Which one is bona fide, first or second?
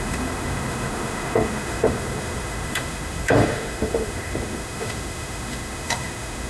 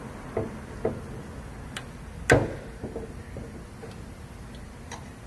second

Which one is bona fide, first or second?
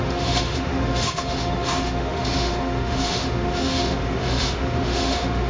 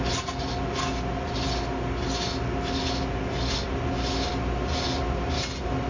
second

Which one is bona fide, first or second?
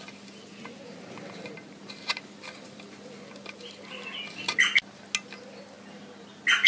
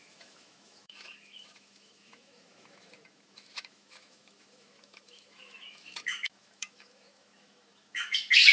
first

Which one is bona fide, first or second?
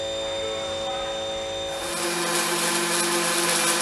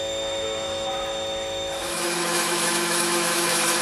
first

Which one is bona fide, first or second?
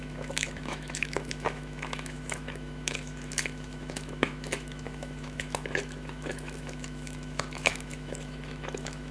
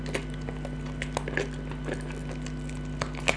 second